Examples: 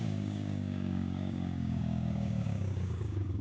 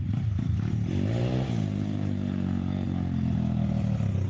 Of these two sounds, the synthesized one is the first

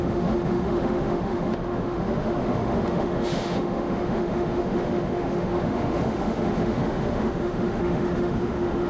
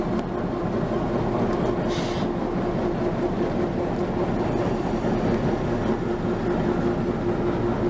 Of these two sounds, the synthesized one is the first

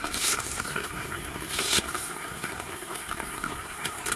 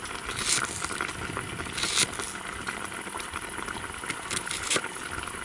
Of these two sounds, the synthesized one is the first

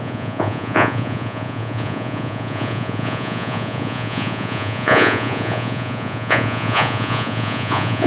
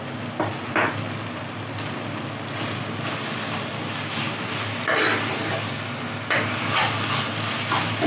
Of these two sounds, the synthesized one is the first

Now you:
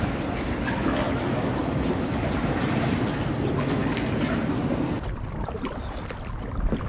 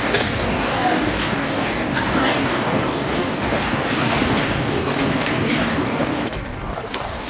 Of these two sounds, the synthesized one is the second